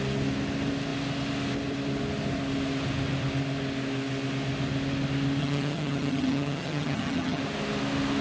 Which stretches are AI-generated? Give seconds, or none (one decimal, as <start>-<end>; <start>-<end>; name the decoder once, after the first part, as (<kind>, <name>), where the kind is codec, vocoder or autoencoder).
5.4-7.4 (vocoder, HiFi-GAN)